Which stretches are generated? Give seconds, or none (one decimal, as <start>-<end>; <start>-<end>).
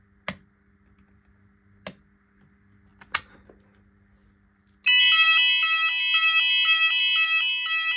none